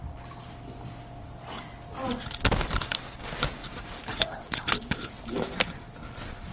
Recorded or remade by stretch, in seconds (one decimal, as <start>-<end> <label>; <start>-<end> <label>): 0.0-3.6 recorded; 3.6-4.8 remade; 4.8-6.5 recorded